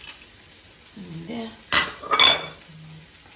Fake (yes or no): no